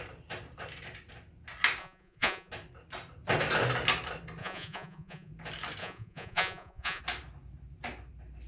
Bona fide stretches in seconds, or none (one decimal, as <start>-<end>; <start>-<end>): 0.0-1.8; 2.5-4.4; 5.3-5.8; 7.0-8.5